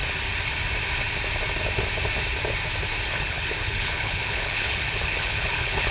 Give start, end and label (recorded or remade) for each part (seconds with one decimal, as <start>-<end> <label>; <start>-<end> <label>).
0.0-3.1 recorded; 3.1-5.9 remade